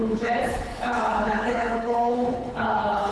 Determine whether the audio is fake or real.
fake